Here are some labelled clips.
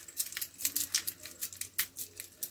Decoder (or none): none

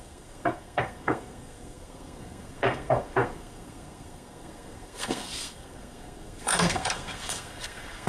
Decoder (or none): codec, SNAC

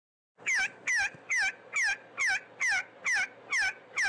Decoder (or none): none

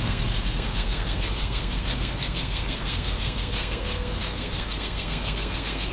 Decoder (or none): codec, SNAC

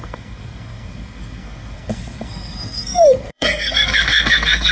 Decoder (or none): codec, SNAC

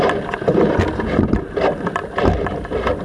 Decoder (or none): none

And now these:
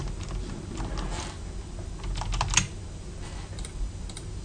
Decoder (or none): none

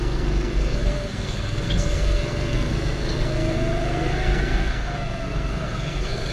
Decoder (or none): codec, SNAC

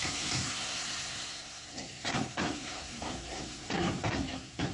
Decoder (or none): codec, SNAC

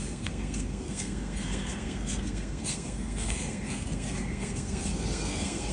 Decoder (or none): codec, SNAC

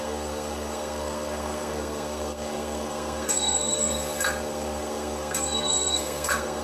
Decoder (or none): codec, SNAC